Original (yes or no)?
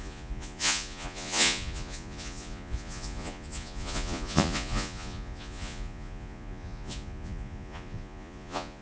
no